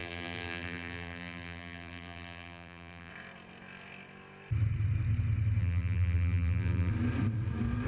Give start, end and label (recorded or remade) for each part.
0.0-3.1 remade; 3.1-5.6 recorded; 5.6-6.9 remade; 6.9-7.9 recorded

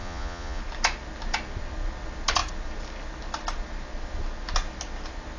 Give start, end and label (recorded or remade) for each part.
0.0-0.6 remade; 0.6-5.4 recorded

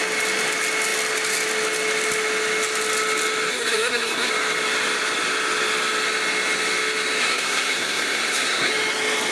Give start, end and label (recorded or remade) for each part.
0.0-3.5 recorded; 3.5-4.3 remade; 4.3-7.2 recorded; 7.2-8.7 remade; 8.7-9.3 recorded

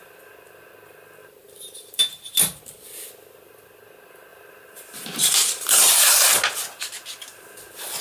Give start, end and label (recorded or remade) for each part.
0.0-1.2 recorded; 1.2-2.6 remade; 2.6-4.3 recorded; 4.3-6.0 remade; 6.0-8.0 recorded

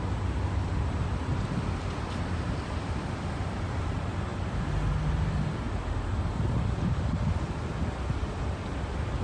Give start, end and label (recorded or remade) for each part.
0.0-9.2 recorded

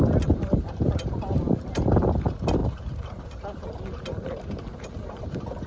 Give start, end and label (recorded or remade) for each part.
0.0-5.7 remade